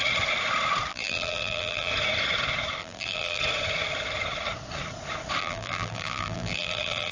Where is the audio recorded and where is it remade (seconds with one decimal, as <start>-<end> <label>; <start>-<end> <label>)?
0.0-0.9 recorded; 0.9-1.9 remade; 1.9-2.8 recorded; 2.8-3.4 remade; 3.4-5.4 recorded; 5.4-7.1 remade